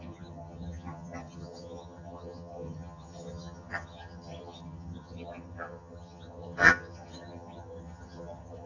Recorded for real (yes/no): no